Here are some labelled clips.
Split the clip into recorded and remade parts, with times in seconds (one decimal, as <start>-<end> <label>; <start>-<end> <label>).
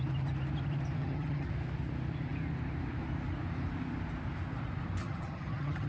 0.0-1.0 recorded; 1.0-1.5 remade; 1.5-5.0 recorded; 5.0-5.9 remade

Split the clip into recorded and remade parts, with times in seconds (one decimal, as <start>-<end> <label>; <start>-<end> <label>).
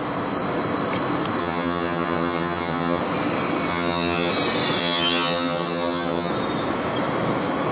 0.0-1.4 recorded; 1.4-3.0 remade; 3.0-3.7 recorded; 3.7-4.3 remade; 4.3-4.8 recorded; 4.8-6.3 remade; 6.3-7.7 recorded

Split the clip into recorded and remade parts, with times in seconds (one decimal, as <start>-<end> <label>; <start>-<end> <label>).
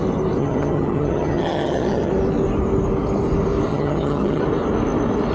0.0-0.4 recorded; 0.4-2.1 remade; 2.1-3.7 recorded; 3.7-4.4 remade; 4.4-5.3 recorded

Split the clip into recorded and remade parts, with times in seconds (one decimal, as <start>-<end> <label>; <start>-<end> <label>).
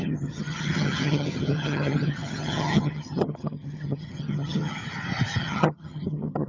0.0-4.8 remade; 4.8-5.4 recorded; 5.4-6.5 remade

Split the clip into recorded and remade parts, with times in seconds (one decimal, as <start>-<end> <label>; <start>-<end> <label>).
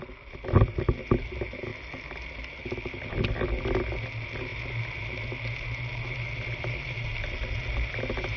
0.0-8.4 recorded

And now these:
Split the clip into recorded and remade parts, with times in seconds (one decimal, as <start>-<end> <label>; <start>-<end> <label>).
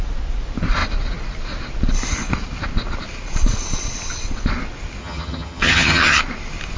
0.0-5.0 recorded; 5.0-6.2 remade; 6.2-6.8 recorded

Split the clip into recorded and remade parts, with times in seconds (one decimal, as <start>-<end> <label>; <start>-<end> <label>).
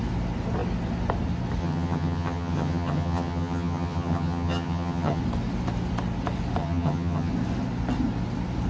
0.0-1.6 recorded; 1.6-5.2 remade; 5.2-6.6 recorded; 6.6-7.3 remade; 7.3-8.7 recorded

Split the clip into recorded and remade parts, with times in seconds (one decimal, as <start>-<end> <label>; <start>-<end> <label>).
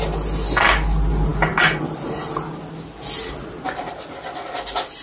0.0-5.0 recorded